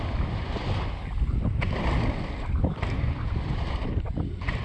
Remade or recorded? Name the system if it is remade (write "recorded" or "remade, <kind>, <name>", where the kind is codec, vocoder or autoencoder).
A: remade, vocoder, BigVGAN v2